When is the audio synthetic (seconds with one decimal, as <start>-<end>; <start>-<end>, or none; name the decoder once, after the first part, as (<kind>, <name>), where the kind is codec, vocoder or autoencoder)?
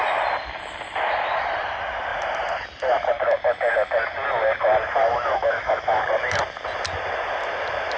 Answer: 5.0-6.0 (autoencoder, DAC-VAE)